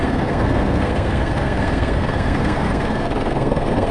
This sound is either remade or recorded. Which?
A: remade